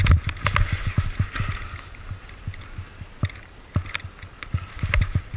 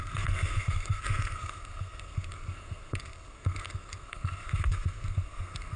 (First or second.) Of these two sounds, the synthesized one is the second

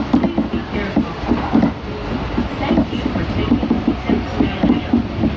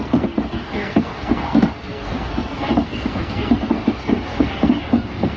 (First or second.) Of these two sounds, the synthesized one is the second